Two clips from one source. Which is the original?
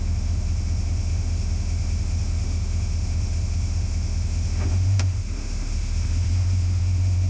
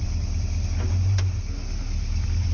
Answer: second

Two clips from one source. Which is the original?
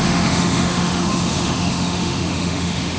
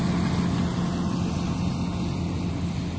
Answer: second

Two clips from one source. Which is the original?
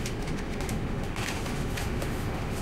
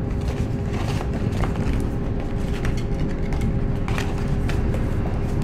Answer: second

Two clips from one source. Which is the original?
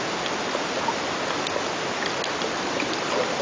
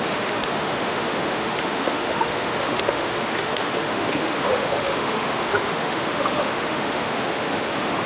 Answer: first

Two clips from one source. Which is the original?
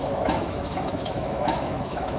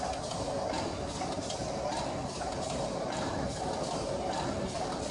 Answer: second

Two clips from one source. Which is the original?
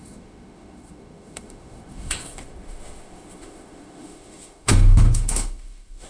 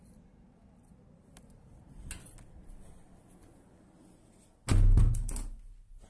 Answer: second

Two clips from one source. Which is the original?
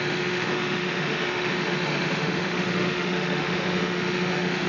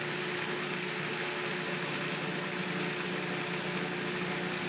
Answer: second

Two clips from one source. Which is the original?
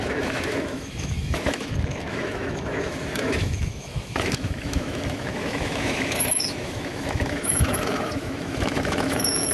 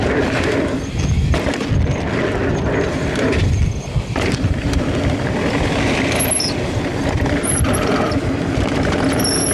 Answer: second